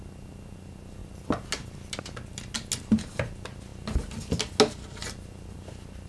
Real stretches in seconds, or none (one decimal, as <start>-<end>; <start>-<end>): 0.0-6.1